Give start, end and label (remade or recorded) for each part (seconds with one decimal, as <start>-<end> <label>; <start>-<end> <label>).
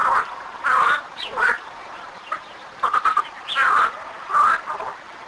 0.0-3.2 remade; 3.2-5.3 recorded